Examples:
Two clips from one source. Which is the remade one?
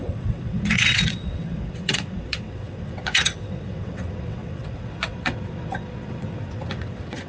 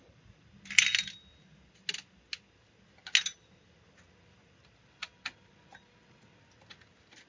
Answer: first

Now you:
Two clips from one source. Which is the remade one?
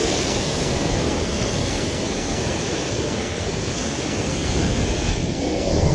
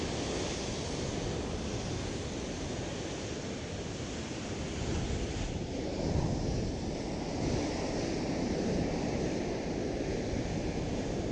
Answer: first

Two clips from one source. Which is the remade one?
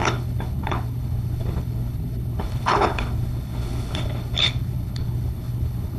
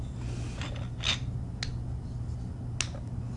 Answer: first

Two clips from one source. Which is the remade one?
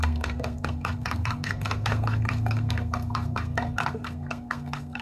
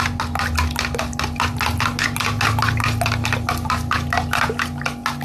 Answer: first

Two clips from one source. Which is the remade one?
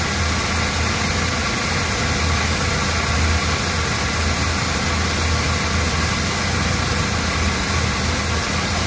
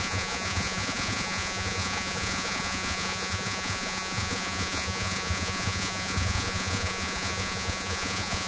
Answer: second